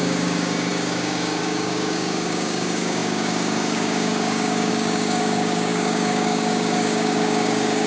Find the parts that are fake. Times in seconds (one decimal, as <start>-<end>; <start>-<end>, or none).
0.0-7.9